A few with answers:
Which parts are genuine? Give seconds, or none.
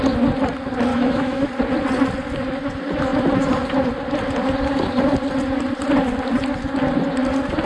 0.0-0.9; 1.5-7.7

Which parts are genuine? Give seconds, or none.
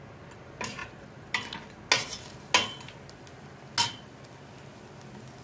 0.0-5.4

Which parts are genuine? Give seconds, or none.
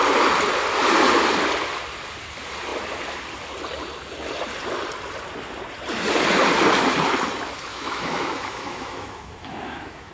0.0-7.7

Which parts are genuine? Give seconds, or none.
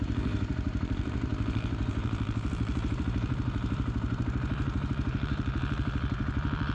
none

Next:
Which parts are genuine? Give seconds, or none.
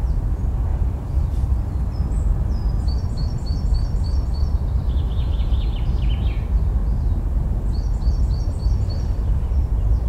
0.0-0.7; 5.4-6.8; 9.7-10.1